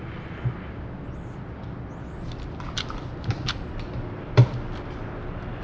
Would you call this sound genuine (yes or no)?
yes